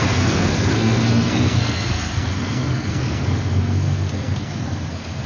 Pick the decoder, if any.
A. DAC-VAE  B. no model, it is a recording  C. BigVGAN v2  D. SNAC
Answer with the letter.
D